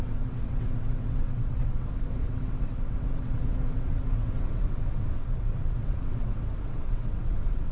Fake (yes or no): yes